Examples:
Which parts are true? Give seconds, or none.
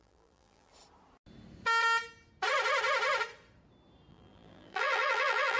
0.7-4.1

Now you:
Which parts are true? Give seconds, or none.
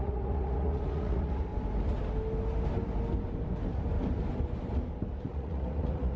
1.5-5.2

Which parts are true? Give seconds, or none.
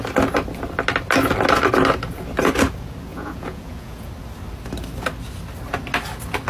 0.0-3.1; 4.1-6.5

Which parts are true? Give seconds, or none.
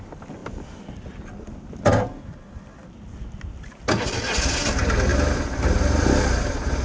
0.0-6.8